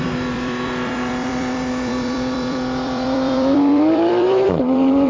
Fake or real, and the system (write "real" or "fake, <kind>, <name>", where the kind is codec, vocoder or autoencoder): fake, vocoder, BigVGAN v2